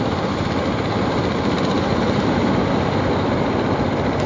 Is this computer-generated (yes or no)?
no